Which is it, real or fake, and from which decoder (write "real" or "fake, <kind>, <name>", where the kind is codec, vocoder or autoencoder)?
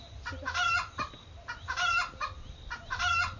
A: real